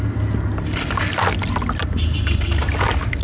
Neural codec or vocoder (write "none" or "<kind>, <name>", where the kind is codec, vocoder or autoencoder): none